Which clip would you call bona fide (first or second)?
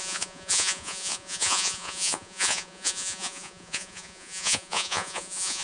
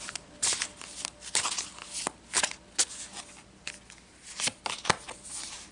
second